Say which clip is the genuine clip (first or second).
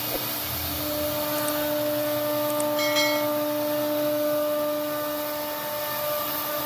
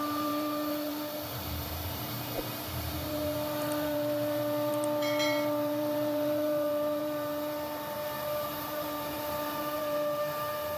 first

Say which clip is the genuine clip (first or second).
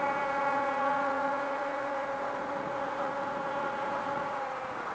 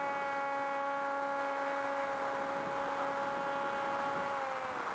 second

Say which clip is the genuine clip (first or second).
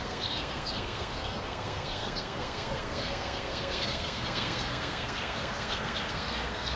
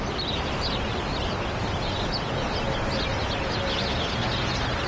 second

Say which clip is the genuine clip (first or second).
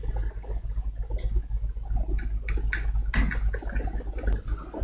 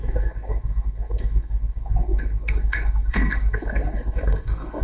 first